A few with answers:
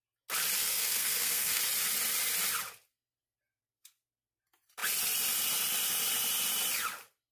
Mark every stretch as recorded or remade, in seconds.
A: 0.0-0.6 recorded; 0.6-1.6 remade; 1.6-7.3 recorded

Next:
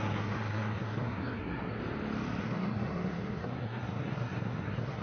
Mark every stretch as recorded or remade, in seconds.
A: 0.0-1.8 remade; 1.8-2.4 recorded; 2.4-5.0 remade

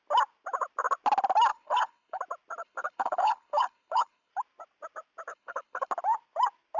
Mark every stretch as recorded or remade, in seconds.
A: 0.0-1.5 recorded; 1.5-2.2 remade; 2.2-2.6 recorded; 2.6-4.3 remade; 4.3-5.3 recorded; 5.3-5.9 remade; 5.9-6.8 recorded

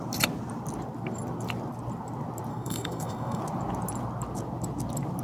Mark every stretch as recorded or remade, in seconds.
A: 0.0-2.5 recorded; 2.5-3.4 remade; 3.4-5.2 recorded

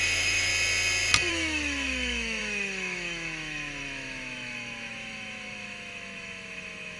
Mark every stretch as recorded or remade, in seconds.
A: 0.0-0.5 remade; 0.5-1.3 recorded; 1.3-7.0 remade

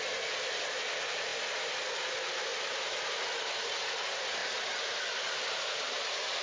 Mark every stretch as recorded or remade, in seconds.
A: 0.0-2.5 recorded; 2.5-3.1 remade; 3.1-4.4 recorded; 4.4-6.0 remade; 6.0-6.4 recorded

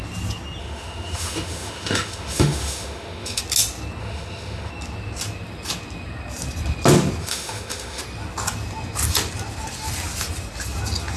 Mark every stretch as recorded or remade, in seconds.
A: 0.0-0.6 recorded; 0.6-3.4 remade; 3.4-4.0 recorded; 4.0-4.7 remade; 4.7-7.2 recorded; 7.2-8.0 remade; 8.0-11.2 recorded

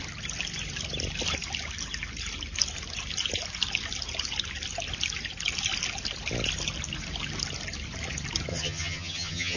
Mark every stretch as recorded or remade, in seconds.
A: 0.0-8.5 recorded; 8.5-9.6 remade